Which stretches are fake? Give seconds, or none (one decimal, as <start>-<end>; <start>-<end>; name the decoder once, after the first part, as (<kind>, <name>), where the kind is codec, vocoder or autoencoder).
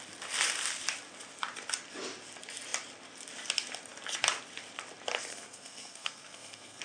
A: 5.3-6.8 (codec, SNAC)